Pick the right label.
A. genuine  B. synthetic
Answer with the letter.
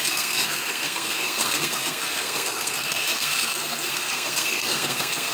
B